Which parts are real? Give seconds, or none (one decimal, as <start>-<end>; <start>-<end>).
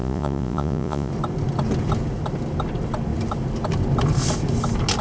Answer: 1.1-5.0